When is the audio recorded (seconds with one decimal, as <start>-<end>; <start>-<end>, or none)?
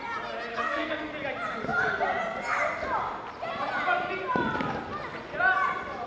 0.0-0.5; 1.1-6.1